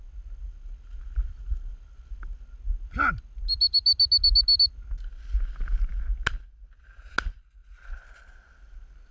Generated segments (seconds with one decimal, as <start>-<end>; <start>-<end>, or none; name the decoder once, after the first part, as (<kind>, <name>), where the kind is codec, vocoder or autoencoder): none